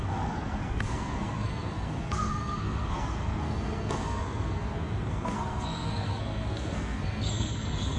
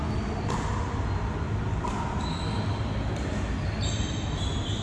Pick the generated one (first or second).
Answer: first